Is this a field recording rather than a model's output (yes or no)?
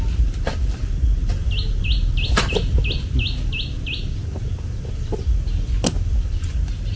yes